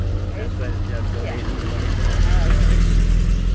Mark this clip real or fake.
real